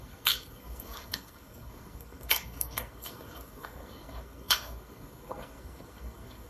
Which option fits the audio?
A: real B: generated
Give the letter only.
B